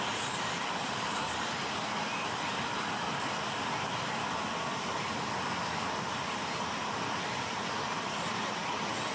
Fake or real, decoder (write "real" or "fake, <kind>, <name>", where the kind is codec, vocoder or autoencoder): real